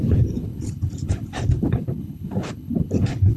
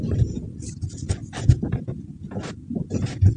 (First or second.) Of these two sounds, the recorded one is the second